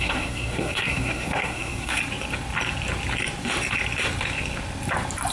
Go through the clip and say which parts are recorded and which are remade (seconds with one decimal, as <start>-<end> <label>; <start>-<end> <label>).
0.0-2.0 remade; 2.0-5.3 recorded